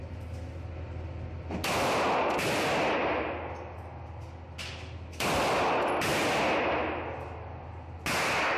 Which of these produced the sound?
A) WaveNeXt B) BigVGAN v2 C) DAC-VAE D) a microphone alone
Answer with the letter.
D